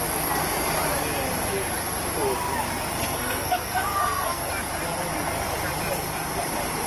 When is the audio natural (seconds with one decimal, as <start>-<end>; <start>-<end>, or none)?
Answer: 0.0-3.0; 4.5-6.9